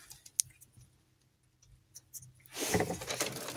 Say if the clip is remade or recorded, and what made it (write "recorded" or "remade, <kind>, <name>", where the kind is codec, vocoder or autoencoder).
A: recorded